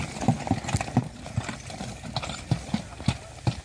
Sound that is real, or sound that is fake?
real